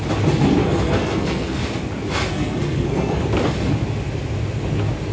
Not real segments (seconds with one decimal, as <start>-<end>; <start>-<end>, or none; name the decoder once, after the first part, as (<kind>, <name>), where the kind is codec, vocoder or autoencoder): 0.6-1.6 (codec, SNAC); 2.3-3.2